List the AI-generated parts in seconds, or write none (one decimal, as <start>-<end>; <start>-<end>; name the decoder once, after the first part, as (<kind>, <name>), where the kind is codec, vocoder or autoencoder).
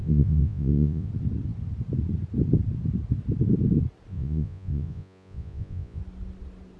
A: 0.0-1.1 (vocoder, Vocos); 4.1-6.0